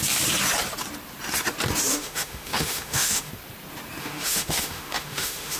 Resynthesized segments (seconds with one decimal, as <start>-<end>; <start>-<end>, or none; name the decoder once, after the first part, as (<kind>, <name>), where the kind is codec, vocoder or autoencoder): 1.9-3.3 (autoencoder, DAC-VAE); 4.0-5.6